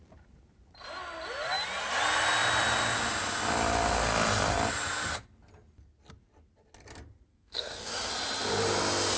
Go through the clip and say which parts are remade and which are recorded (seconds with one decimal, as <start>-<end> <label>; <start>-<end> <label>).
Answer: 0.0-7.3 recorded; 7.3-8.1 remade; 8.1-9.2 recorded